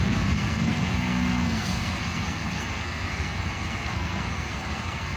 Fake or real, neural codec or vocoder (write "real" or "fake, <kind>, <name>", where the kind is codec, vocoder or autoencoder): fake, codec, SNAC